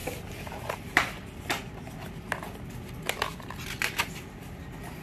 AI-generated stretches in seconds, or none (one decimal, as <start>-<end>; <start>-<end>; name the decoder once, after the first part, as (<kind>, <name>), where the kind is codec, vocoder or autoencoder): 3.3-4.1 (vocoder, BigVGAN v2)